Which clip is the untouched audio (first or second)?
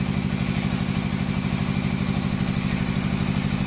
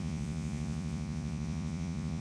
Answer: first